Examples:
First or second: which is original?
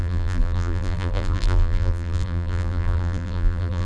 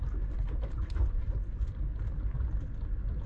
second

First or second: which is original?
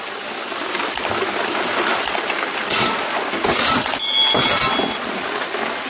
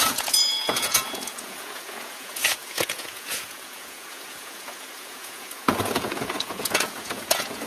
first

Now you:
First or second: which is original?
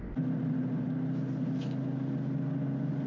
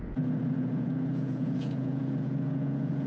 first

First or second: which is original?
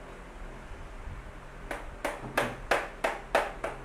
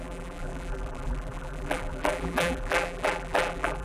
first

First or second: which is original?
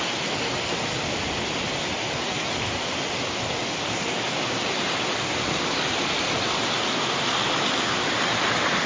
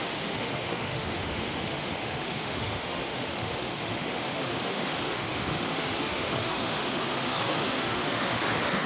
first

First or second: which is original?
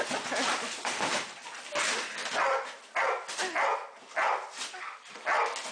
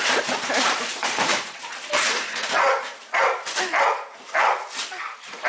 first